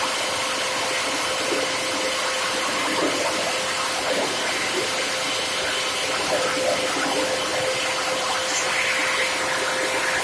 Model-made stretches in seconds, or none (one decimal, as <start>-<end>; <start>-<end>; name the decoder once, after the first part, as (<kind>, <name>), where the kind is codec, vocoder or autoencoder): none